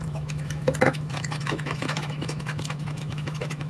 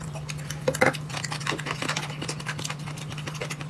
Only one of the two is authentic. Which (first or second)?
second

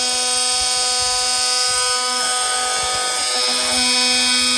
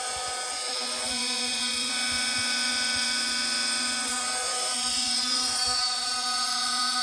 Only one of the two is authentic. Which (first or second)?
first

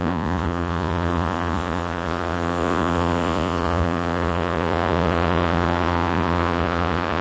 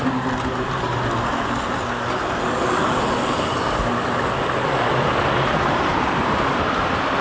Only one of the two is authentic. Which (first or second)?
second